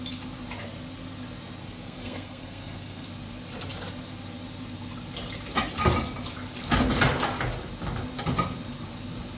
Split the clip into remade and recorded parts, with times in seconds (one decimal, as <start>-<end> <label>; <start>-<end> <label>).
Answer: 0.0-1.6 recorded; 1.6-3.1 remade; 3.1-9.4 recorded